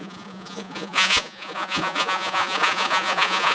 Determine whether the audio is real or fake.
fake